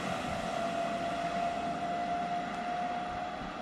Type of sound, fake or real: real